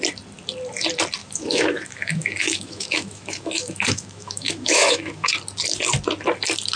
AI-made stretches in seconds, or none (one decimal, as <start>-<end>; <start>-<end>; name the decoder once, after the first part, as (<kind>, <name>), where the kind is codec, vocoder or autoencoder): 1.2-5.3 (autoencoder, DAC-VAE)